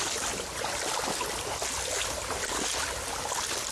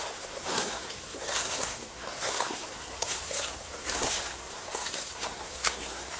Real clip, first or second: first